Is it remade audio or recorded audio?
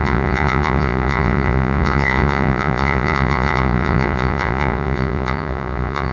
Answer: remade